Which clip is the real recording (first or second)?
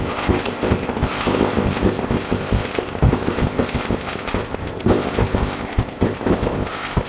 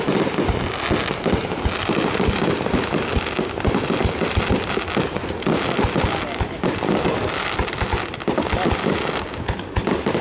second